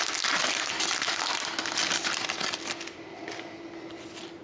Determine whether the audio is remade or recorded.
recorded